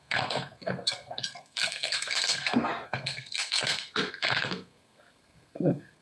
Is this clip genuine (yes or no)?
no